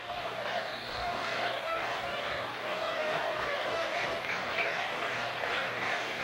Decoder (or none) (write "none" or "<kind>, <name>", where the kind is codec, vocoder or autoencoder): codec, DAC